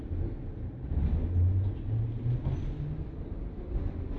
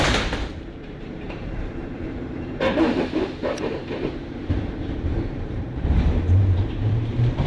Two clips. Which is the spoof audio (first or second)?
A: second